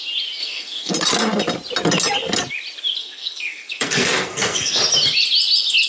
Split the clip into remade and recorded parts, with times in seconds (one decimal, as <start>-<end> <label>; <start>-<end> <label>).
0.0-0.4 recorded; 0.4-0.9 remade; 0.9-3.0 recorded; 3.0-4.8 remade; 4.8-5.9 recorded

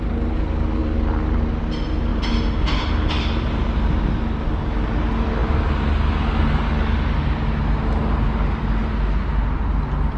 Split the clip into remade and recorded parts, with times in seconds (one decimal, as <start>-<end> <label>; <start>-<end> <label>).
0.0-10.2 recorded

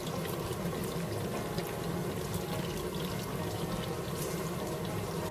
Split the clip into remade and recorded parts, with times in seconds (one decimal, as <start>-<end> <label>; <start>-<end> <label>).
0.0-0.8 remade; 0.8-4.0 recorded; 4.0-5.3 remade

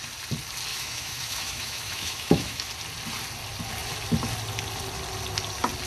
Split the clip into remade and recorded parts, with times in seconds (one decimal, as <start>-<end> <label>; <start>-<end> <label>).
0.0-0.7 recorded; 0.7-2.7 remade; 2.7-5.9 recorded

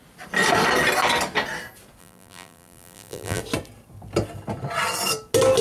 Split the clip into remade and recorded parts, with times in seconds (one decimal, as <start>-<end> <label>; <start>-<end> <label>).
0.0-2.0 recorded; 2.0-3.4 remade; 3.4-5.6 recorded

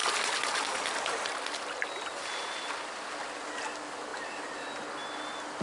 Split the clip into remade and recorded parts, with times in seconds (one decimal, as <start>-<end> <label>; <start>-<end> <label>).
0.0-5.6 recorded

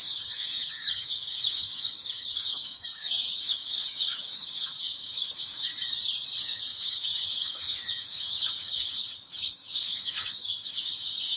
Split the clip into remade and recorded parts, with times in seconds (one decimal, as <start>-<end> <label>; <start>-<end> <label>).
0.0-5.7 remade; 5.7-6.4 recorded; 6.4-11.4 remade